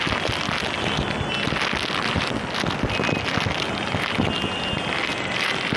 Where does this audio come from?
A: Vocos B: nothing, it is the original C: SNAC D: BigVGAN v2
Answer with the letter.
B